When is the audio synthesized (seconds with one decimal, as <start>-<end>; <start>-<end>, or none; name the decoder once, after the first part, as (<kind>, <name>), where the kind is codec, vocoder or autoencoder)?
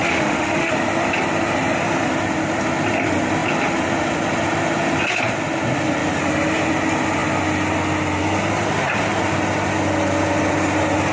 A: 0.0-0.7 (autoencoder, DAC-VAE)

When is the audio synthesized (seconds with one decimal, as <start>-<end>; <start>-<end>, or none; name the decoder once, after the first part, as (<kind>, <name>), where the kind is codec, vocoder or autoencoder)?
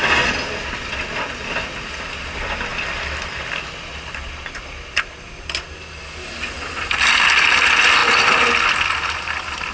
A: none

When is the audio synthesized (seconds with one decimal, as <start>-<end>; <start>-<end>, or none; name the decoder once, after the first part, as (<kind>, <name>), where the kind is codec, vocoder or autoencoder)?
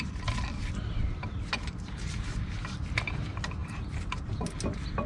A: none